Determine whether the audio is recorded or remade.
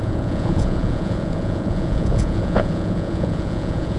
remade